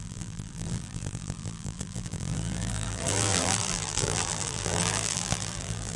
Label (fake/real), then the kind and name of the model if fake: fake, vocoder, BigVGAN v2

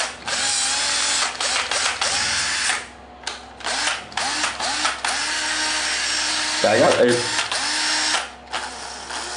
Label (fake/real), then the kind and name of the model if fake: real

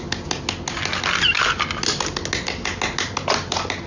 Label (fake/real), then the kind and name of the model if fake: real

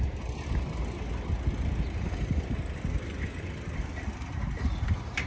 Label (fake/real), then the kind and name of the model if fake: real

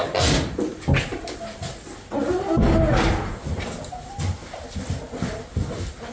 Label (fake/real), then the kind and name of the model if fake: real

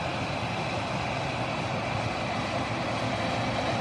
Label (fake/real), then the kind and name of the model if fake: fake, vocoder, BigVGAN v2